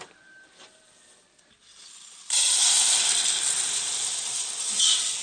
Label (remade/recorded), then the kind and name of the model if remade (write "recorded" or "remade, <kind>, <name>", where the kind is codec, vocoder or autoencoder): recorded